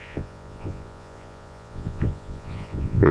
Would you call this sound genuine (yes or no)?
no